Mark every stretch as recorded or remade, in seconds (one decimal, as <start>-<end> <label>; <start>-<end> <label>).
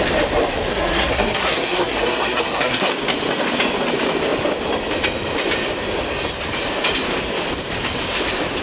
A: 0.0-0.7 recorded; 0.7-2.9 remade; 2.9-8.6 recorded